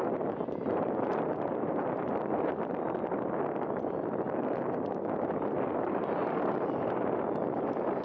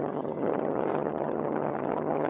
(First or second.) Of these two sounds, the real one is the first